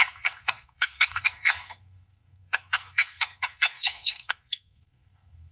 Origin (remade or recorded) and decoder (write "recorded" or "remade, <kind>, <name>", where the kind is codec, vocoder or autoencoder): remade, codec, SNAC